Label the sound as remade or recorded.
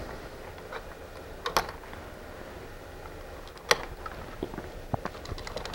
recorded